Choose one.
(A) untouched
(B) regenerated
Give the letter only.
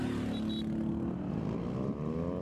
A